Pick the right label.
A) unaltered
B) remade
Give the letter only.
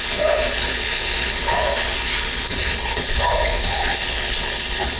B